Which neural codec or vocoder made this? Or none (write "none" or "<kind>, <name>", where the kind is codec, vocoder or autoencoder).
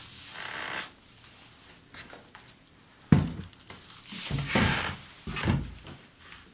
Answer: none